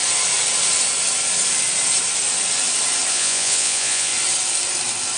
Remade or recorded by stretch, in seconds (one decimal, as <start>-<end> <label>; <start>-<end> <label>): 0.0-3.1 recorded; 3.1-4.1 remade; 4.1-5.2 recorded